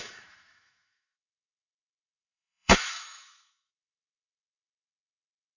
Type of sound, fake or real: fake